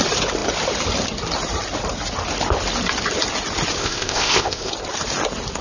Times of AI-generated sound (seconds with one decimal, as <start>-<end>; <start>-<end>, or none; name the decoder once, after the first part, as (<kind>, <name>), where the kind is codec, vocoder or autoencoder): 3.8-4.7 (codec, ZipCodec)